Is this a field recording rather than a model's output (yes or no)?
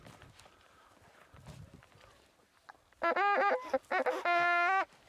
yes